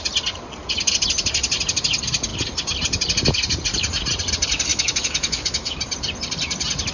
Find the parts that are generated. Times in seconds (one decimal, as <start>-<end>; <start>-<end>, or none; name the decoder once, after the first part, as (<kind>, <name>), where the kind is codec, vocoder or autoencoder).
4.7-5.8 (autoencoder, DAC-VAE)